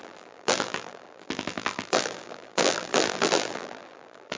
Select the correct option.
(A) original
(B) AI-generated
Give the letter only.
B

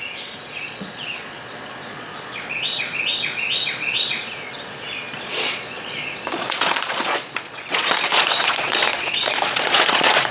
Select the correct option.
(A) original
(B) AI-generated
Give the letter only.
B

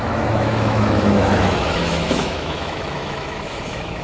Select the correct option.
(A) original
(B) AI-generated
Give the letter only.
B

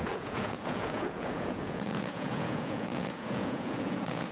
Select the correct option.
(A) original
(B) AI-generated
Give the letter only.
B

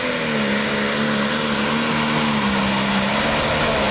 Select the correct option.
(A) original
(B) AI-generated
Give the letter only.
A